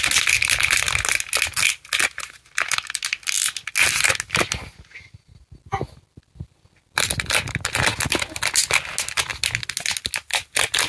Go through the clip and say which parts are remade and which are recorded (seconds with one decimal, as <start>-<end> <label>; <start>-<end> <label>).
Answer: 0.0-10.9 recorded